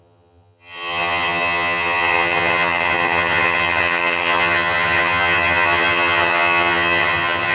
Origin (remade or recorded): remade